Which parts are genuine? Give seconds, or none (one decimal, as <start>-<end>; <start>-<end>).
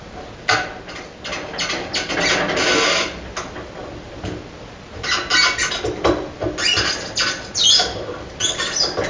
0.0-9.1